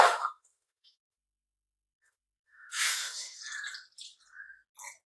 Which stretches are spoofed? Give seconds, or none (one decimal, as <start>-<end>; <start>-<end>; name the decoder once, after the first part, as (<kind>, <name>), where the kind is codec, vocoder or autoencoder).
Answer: 0.0-3.4 (autoencoder, DAC-VAE)